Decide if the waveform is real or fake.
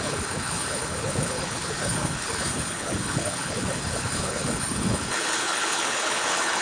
fake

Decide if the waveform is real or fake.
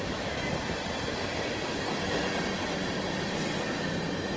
real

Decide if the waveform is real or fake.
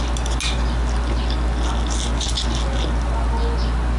real